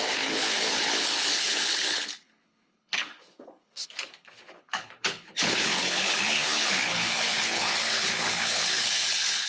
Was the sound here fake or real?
fake